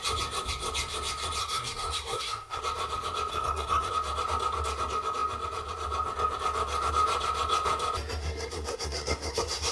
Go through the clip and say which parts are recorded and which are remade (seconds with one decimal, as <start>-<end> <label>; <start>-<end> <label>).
0.0-1.4 recorded; 1.4-2.6 remade; 2.6-3.3 recorded; 3.3-3.9 remade; 3.9-8.2 recorded; 8.2-9.7 remade